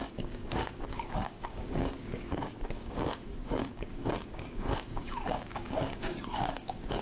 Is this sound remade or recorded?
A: remade